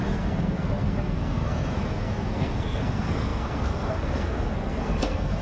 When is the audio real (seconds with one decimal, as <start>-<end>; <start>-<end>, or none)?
none